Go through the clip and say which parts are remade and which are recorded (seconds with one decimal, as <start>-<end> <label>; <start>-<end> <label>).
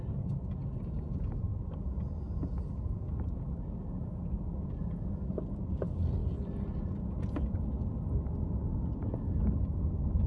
0.0-10.3 recorded